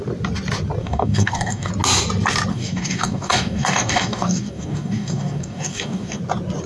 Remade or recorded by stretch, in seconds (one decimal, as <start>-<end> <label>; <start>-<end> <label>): 0.0-0.8 recorded; 0.8-1.7 remade; 1.7-2.5 recorded; 2.5-6.2 remade; 6.2-6.7 recorded